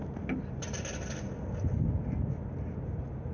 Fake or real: real